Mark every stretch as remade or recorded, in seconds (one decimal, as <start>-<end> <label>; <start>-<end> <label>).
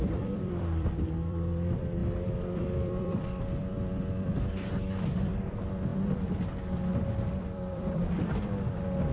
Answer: 0.0-5.9 remade; 5.9-7.4 recorded; 7.4-9.1 remade